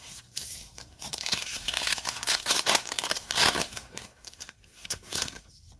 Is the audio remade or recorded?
remade